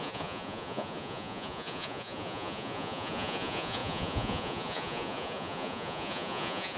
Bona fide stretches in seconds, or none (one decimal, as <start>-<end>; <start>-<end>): none